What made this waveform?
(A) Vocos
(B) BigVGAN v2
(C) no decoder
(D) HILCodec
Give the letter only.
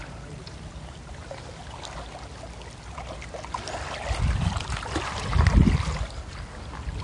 C